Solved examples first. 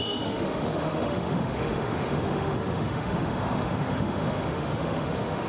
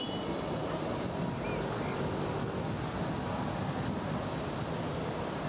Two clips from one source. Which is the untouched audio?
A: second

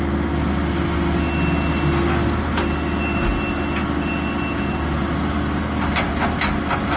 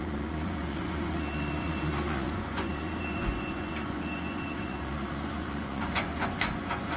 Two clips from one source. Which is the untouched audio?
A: first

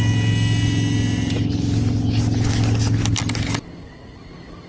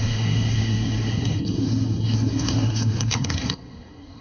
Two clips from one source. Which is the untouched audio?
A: first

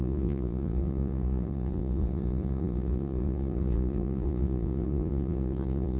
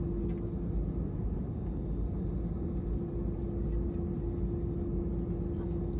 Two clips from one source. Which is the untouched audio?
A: second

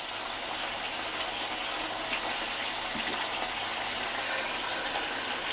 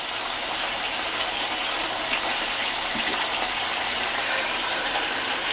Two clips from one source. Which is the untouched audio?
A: first